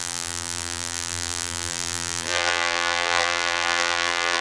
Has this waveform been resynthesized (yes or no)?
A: yes